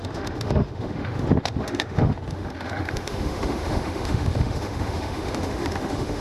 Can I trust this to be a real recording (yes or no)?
no